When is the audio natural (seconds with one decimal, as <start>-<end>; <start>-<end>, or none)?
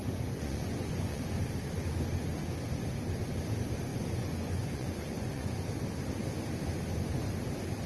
1.2-3.9; 5.5-7.9